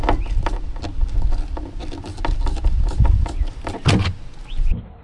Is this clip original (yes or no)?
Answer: yes